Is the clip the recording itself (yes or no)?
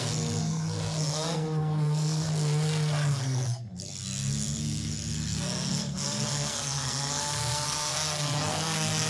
no